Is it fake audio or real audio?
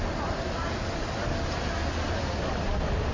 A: real